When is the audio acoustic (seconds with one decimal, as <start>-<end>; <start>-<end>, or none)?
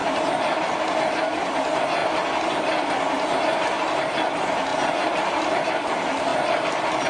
0.0-7.1